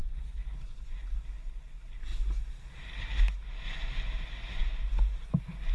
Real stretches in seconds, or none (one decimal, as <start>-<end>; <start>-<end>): 1.0-5.7